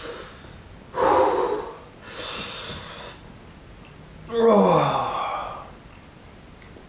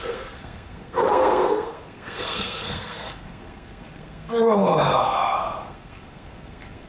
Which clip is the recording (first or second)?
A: first